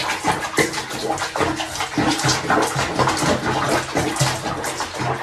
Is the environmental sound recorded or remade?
recorded